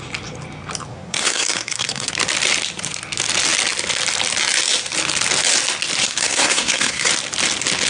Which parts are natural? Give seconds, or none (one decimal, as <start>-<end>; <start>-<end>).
0.0-0.9; 2.1-6.0; 7.1-7.9